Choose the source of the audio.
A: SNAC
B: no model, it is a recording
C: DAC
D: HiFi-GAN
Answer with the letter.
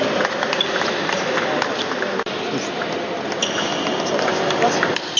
B